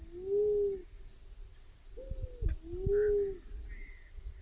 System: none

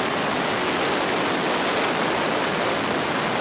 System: none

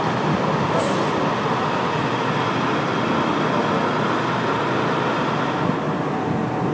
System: none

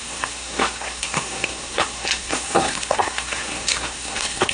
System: codec, SNAC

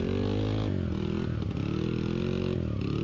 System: none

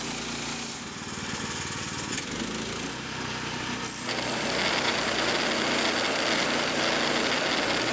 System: none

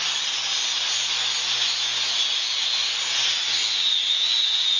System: none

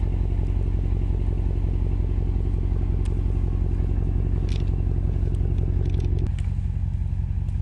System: none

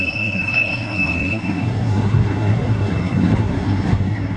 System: codec, SNAC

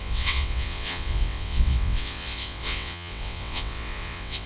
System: vocoder, WaveNeXt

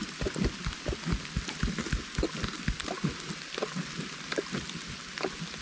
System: none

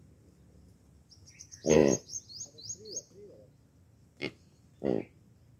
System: none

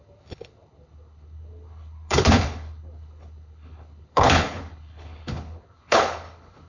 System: codec, HILCodec